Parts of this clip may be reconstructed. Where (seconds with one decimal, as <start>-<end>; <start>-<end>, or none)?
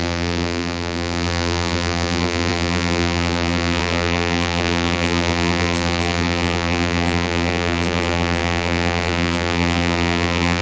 0.0-10.6